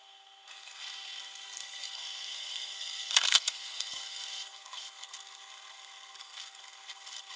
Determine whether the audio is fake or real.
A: fake